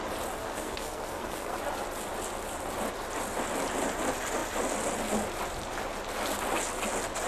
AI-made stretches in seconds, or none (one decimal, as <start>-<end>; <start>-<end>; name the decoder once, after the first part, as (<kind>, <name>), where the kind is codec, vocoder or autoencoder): 0.4-1.6 (codec, SNAC)